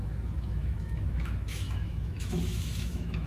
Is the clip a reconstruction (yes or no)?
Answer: yes